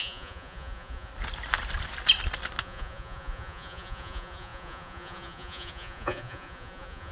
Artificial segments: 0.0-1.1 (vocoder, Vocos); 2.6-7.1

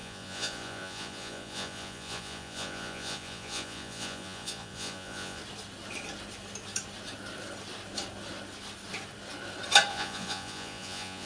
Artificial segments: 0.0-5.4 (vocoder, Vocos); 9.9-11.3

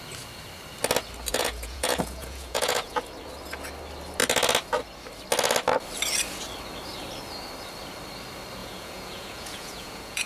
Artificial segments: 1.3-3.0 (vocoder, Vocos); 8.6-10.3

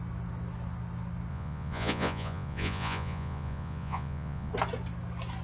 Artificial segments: 1.3-4.5 (vocoder, Vocos)

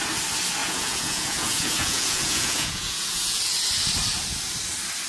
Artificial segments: 0.6-3.4 (vocoder, Vocos)

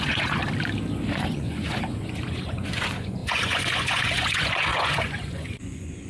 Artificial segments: 0.0-0.4 (vocoder, Vocos); 1.1-6.1

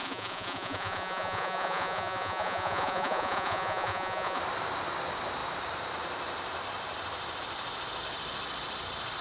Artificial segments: 0.0-4.4 (vocoder, Vocos)

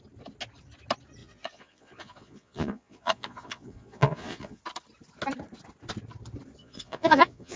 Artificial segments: 1.2-4.6 (vocoder, Vocos); 6.6-7.6